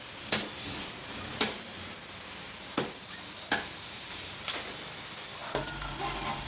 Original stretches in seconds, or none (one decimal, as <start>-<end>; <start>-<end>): 0.0-6.5